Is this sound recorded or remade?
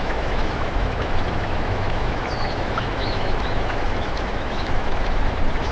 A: remade